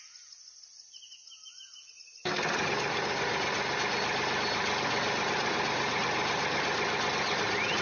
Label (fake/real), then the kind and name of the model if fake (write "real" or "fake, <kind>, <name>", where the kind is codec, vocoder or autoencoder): real